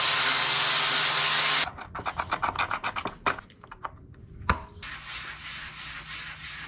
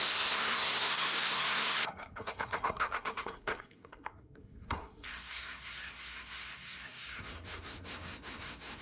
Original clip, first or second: first